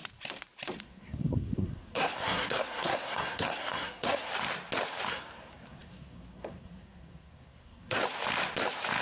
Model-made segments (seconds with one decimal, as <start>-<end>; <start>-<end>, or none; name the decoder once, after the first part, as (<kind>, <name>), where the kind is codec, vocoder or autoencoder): 0.8-4.3 (codec, SNAC); 5.1-8.0